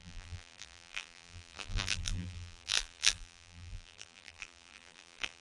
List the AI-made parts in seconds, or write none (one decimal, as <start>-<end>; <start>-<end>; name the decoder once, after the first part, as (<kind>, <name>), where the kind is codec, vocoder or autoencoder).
0.0-5.4 (vocoder, BigVGAN v2)